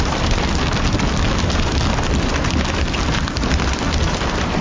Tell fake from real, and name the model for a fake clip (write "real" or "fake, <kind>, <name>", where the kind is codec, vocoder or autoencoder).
real